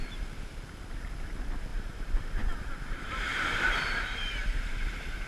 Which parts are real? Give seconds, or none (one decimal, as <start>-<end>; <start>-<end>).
0.0-1.7